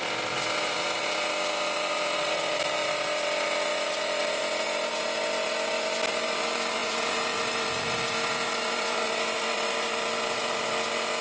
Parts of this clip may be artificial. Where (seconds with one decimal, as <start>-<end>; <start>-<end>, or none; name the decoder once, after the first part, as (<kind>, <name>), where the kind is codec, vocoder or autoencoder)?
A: 6.8-7.4 (vocoder, Vocos)